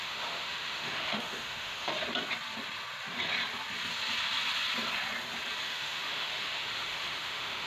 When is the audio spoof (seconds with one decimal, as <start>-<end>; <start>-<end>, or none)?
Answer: 0.0-1.9; 5.6-7.7